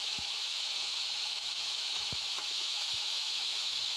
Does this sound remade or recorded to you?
remade